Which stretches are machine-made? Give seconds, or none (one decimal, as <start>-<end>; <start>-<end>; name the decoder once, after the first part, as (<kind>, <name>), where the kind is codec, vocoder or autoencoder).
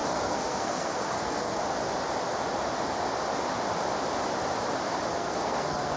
0.0-1.6 (codec, SNAC); 5.1-6.0